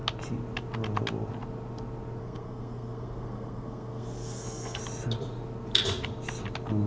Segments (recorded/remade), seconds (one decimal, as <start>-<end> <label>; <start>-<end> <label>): 0.0-2.2 recorded; 2.2-4.8 remade; 4.8-6.9 recorded